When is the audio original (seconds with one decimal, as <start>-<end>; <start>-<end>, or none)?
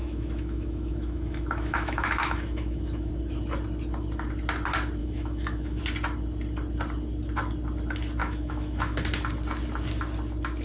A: 3.1-5.0; 5.8-8.2; 9.0-10.6